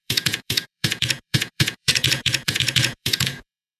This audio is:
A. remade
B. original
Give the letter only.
A